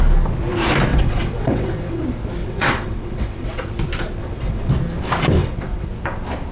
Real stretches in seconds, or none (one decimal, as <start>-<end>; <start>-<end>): 0.0-0.9; 2.0-2.4; 3.7-4.2; 4.7-5.4; 5.9-6.5